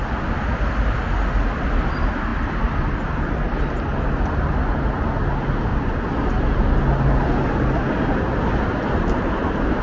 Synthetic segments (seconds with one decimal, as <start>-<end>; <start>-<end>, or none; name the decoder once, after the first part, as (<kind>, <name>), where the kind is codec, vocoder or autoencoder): none